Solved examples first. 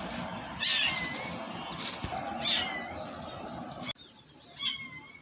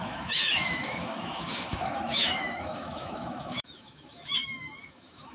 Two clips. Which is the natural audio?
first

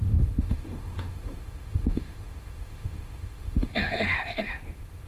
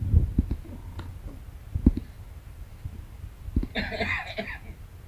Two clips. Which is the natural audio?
second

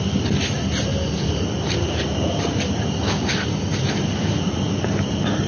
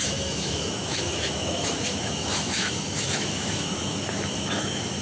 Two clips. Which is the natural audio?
first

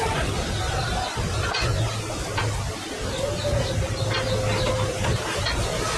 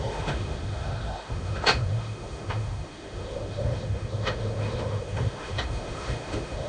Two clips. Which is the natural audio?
first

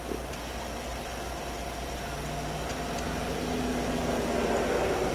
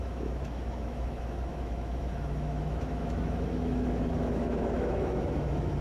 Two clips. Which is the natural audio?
first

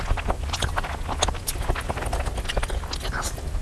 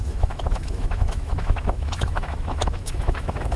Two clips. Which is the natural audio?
first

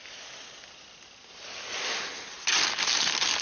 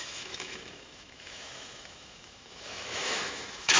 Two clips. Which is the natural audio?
first